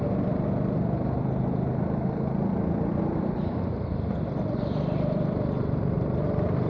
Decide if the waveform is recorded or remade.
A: recorded